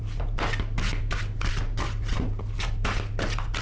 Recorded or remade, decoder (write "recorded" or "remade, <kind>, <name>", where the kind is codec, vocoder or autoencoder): recorded